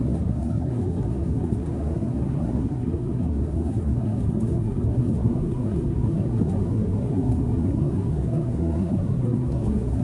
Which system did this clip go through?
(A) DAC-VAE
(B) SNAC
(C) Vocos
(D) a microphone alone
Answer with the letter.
B